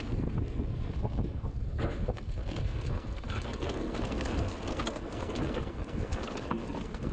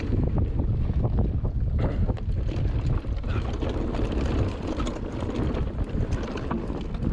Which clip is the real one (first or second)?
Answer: second